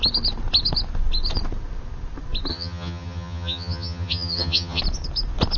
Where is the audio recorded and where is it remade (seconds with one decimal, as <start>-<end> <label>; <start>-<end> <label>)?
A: 0.0-2.5 recorded; 2.5-4.8 remade; 4.8-5.6 recorded